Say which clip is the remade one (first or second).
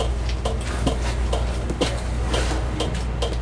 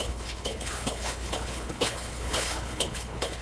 second